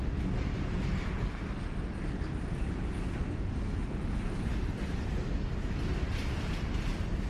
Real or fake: real